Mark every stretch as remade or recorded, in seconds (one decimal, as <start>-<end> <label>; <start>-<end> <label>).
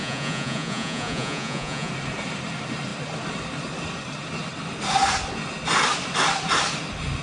0.0-1.9 remade; 1.9-7.2 recorded